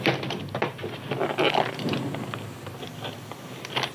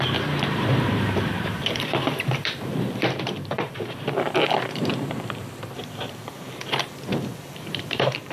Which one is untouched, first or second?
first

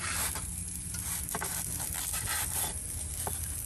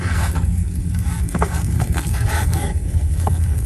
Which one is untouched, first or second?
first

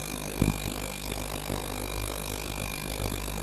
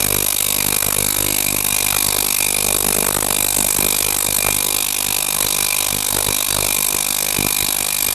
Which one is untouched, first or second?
second